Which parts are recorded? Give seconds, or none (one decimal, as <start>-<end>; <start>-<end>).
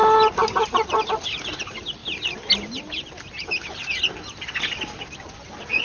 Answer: 0.0-5.8